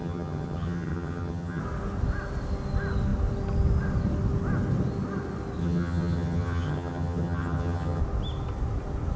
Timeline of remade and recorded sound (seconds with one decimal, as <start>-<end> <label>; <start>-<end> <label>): 0.0-1.6 remade; 1.6-5.6 recorded; 5.6-8.0 remade; 8.0-9.2 recorded